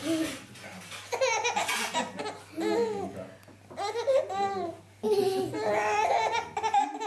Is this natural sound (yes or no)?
yes